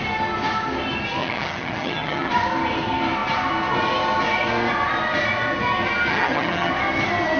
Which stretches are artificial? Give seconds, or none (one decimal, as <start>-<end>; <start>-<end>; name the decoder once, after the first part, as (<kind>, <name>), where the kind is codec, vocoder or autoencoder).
1.2-2.3 (vocoder, HiFi-GAN); 6.1-6.7

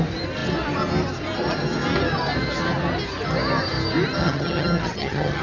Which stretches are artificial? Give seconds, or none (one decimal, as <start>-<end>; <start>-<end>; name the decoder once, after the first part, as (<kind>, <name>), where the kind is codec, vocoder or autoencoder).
4.2-5.4 (vocoder, HiFi-GAN)

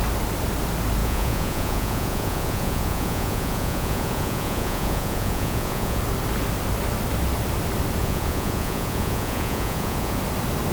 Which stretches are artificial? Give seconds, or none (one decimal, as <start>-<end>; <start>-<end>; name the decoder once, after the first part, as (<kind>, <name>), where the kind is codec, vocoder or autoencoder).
1.0-6.0 (vocoder, Vocos); 8.0-10.2

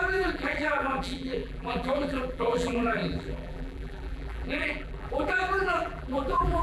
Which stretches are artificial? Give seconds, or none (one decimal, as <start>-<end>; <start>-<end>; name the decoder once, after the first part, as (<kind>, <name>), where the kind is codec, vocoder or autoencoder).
0.0-6.6 (vocoder, BigVGAN v2)